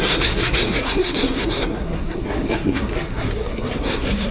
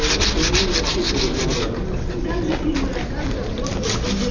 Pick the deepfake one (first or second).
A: first